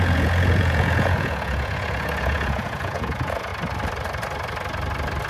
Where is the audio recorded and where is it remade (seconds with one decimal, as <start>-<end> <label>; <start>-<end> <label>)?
0.0-3.5 remade; 3.5-5.3 recorded